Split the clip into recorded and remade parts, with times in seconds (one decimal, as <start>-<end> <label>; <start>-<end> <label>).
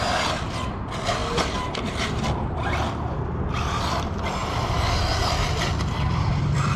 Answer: 0.0-1.2 recorded; 1.2-3.0 remade; 3.0-4.4 recorded; 4.4-6.8 remade